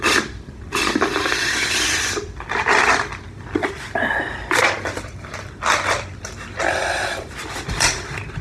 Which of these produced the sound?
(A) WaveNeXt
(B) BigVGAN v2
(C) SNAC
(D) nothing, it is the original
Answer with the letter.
B